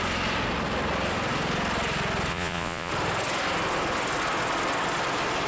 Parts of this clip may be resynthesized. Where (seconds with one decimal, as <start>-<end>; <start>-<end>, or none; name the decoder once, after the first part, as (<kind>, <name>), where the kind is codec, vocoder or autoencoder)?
2.3-2.9 (vocoder, Vocos)

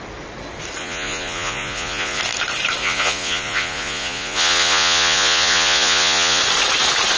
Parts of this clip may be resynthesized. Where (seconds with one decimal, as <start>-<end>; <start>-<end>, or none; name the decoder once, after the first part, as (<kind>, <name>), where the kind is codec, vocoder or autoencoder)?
0.8-2.2 (vocoder, Vocos); 2.8-6.4

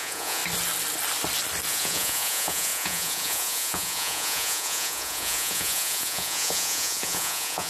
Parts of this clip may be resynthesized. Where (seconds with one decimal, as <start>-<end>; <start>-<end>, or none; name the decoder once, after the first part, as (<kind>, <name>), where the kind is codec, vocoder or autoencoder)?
0.0-0.4 (vocoder, Vocos); 1.7-7.7

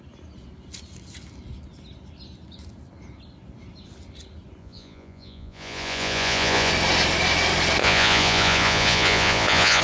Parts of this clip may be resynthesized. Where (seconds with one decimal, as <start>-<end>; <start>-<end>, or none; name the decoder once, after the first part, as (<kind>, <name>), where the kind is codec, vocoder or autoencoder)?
4.6-6.7 (vocoder, Vocos); 7.8-9.8

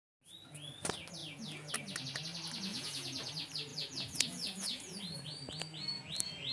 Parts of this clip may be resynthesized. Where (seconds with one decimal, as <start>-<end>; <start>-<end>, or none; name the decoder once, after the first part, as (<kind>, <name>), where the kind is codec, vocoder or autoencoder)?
1.2-1.7 (vocoder, Vocos); 2.7-3.3; 3.7-5.0